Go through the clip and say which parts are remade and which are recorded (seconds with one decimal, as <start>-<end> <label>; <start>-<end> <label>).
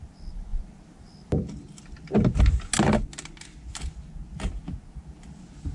0.0-5.7 recorded